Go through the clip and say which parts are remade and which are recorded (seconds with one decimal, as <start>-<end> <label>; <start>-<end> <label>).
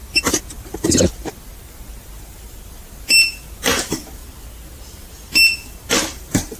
0.0-1.5 remade; 1.5-6.6 recorded